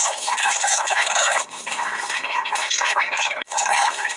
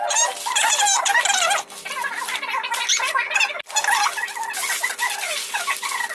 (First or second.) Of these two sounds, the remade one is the first